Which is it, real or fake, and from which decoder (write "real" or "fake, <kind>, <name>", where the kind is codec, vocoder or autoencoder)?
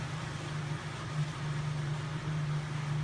real